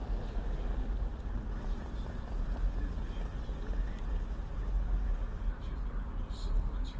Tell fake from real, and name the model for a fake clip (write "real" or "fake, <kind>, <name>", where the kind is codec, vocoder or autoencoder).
real